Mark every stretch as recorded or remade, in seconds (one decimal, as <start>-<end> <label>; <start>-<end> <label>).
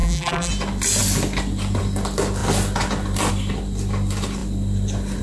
0.0-0.5 remade; 0.5-5.2 recorded